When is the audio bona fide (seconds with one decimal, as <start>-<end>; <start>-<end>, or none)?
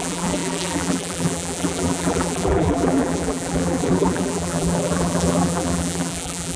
none